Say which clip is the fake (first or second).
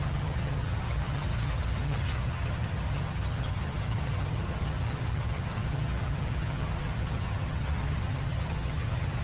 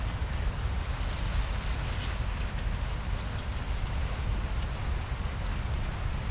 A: first